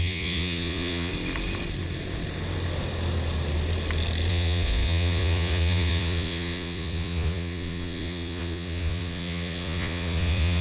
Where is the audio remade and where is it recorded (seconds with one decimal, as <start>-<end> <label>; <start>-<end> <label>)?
0.0-1.1 remade; 1.1-4.3 recorded; 4.3-10.6 remade